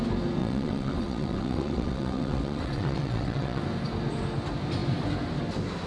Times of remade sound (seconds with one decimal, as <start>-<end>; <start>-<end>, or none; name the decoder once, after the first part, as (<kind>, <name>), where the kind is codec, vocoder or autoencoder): 0.4-3.6 (vocoder, WaveNeXt)